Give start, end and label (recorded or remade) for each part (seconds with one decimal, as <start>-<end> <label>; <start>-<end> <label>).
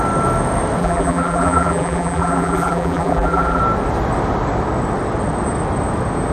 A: 0.0-0.8 recorded; 0.8-3.6 remade; 3.6-6.3 recorded